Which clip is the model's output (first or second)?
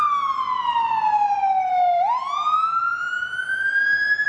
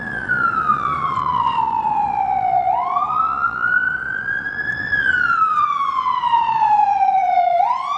second